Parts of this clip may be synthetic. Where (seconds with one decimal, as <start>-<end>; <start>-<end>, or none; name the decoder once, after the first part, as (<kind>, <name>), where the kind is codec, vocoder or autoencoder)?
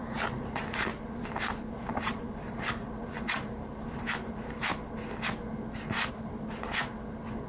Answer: 0.0-0.9 (vocoder, BigVGAN v2); 1.7-4.7; 6.1-6.9